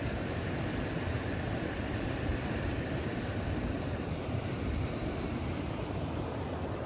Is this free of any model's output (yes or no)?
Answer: no